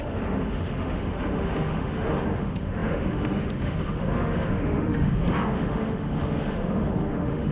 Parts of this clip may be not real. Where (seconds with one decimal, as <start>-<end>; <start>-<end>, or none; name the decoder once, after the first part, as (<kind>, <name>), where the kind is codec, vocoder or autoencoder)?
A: 0.0-7.5 (autoencoder, DAC-VAE)